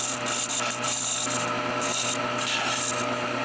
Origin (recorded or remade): recorded